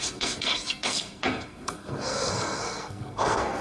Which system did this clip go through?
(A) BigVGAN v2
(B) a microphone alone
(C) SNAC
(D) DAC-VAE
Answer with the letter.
C